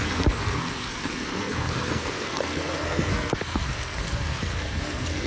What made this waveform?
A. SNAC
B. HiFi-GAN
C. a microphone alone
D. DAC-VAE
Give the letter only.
A